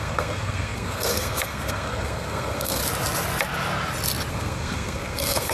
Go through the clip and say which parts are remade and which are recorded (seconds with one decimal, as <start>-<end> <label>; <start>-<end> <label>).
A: 0.0-2.8 remade; 2.8-4.3 recorded; 4.3-5.5 remade